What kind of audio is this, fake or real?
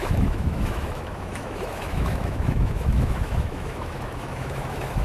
fake